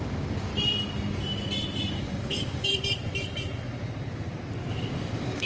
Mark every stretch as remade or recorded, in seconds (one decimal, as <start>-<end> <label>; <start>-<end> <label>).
0.0-0.5 remade; 0.5-1.9 recorded; 1.9-2.7 remade; 2.7-4.7 recorded; 4.7-5.5 remade